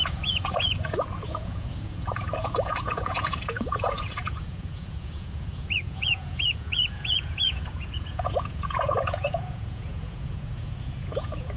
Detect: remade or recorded remade